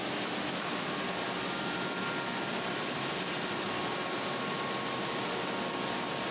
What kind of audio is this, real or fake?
real